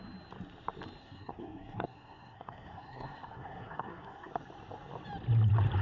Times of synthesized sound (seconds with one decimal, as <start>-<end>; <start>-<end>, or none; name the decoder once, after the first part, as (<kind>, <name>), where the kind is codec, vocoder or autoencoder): 1.0-4.3 (codec, SNAC)